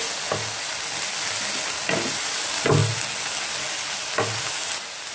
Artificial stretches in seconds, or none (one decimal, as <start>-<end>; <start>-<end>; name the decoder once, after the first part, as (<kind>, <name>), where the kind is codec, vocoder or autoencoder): none